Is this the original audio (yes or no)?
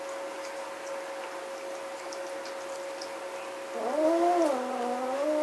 yes